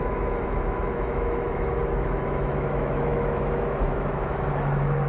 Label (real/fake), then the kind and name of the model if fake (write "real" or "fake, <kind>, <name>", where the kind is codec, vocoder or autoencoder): fake, autoencoder, DAC-VAE